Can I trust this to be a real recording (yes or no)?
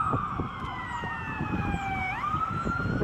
yes